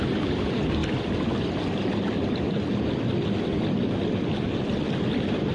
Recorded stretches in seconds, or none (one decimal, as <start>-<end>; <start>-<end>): 0.0-5.5